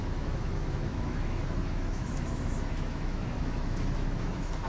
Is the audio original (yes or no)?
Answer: no